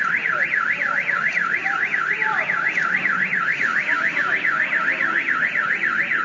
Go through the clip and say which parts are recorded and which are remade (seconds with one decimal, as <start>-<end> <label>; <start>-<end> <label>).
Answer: 0.0-6.2 remade